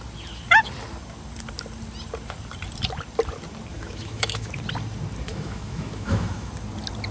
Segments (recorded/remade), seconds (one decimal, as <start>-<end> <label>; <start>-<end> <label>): 0.0-3.7 recorded; 3.7-4.5 remade; 4.5-5.3 recorded; 5.3-6.5 remade; 6.5-7.1 recorded